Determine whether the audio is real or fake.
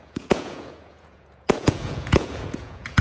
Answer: fake